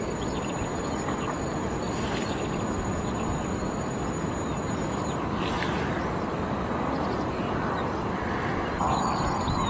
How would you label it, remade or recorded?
remade